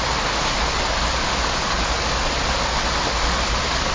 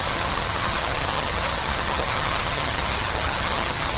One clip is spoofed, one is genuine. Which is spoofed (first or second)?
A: second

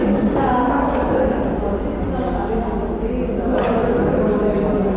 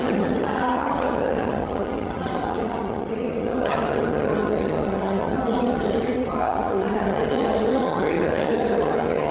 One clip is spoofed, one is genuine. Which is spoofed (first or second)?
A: second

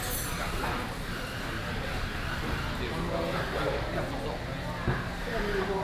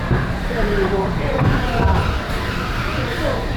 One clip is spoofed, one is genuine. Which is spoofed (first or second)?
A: second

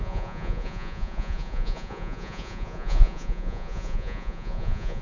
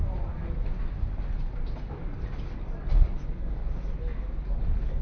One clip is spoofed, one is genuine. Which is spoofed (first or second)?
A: first